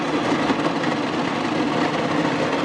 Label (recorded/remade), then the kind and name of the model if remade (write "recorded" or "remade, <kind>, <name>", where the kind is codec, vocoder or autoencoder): recorded